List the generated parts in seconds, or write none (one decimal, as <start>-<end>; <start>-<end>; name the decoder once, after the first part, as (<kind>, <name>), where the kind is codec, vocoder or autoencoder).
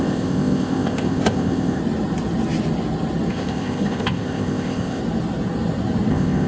0.0-1.8 (codec, ZipCodec); 3.3-5.0; 6.1-6.5